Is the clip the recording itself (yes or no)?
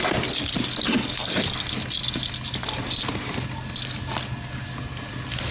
yes